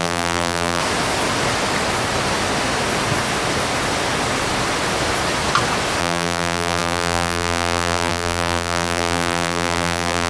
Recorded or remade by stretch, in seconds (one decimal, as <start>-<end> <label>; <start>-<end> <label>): 0.0-0.8 remade; 0.8-6.0 recorded; 6.0-10.3 remade